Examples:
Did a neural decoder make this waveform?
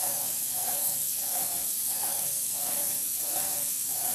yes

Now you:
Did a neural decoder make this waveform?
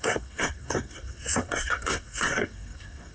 yes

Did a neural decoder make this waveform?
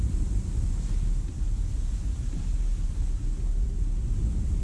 no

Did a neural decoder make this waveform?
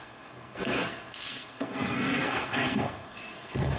yes